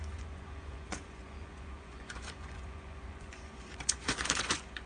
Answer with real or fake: fake